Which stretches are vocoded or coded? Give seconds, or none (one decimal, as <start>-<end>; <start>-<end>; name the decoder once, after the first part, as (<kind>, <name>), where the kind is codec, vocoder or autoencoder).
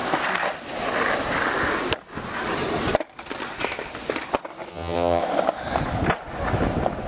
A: 4.7-5.2 (vocoder, HiFi-GAN)